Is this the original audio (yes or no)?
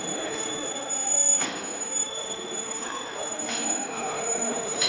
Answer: no